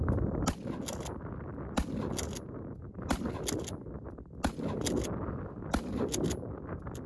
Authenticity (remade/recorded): recorded